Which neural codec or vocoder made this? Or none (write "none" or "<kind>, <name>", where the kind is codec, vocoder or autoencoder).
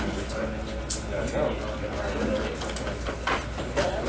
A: none